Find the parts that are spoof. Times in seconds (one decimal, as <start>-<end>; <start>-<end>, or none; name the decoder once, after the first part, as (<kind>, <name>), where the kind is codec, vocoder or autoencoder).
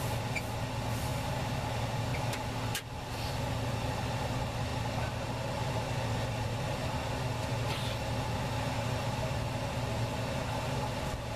none